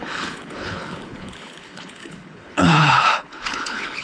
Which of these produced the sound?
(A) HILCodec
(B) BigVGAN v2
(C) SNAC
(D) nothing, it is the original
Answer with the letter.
A